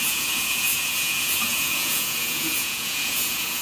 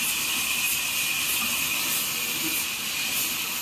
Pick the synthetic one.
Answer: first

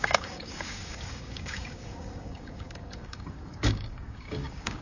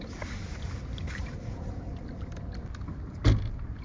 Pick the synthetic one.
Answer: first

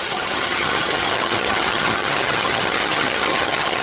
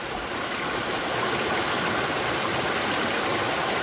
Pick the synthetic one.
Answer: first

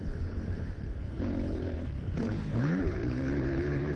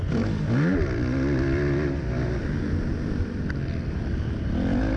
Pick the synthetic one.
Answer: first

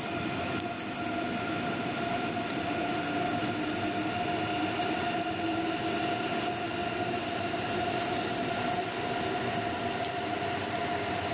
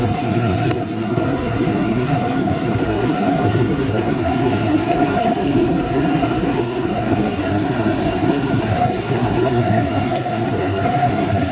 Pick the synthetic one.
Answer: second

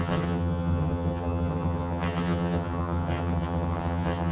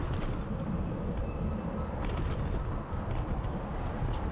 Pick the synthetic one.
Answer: first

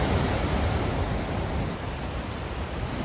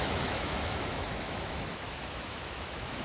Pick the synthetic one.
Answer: second